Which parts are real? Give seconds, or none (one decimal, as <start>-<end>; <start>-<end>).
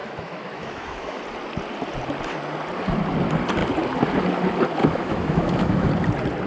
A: 1.2-4.8; 5.9-6.5